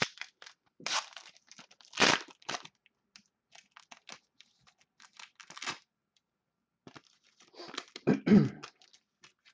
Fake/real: real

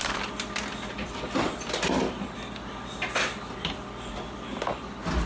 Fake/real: real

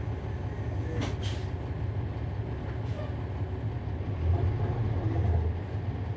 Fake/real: real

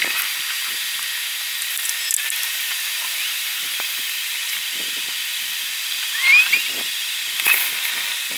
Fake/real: real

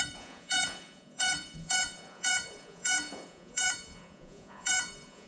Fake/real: fake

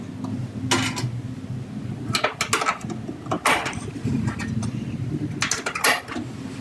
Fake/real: real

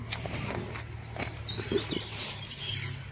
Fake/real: real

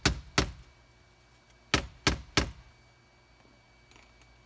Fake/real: real